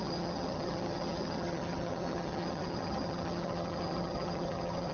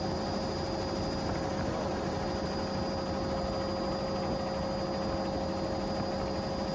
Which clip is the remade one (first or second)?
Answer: first